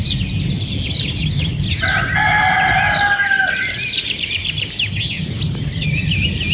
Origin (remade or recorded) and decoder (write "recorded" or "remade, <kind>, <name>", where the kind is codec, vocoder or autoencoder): recorded